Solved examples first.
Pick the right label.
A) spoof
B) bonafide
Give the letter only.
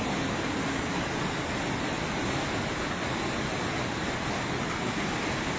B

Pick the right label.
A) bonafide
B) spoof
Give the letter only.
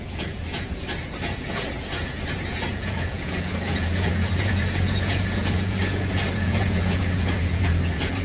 B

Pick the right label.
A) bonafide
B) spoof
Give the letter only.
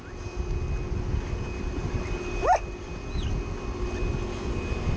A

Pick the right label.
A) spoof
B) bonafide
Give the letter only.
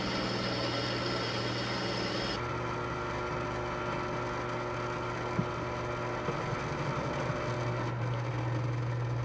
B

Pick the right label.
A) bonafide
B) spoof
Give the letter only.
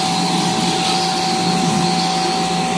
A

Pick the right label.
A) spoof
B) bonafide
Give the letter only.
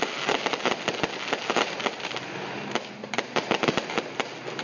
B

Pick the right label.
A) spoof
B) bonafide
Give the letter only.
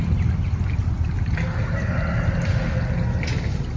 B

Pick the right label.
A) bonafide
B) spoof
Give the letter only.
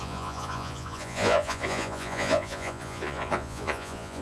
B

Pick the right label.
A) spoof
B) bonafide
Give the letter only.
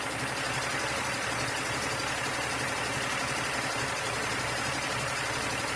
B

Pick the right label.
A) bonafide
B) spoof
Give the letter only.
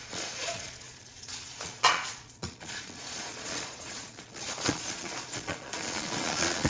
B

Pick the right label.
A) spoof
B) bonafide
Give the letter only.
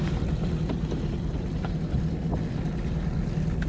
B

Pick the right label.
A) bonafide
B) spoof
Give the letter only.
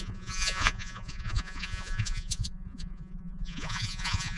B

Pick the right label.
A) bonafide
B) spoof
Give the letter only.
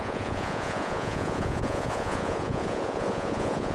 B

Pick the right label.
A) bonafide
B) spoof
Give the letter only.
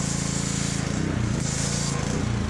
A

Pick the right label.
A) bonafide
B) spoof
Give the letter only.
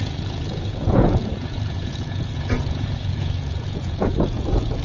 B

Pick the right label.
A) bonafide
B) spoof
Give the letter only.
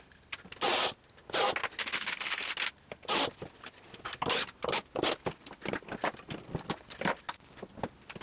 A